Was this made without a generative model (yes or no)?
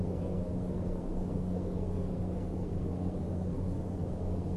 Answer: no